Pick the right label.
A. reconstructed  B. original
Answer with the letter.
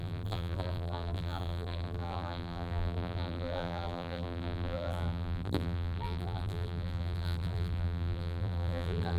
A